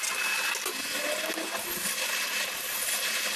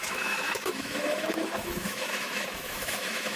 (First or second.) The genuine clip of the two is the first